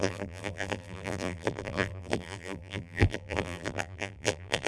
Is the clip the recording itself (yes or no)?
no